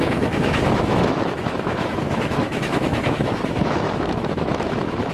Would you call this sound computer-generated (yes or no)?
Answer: yes